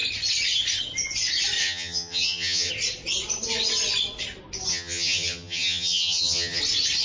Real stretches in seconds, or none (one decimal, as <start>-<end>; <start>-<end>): 0.0-1.6; 2.7-4.7; 6.6-7.0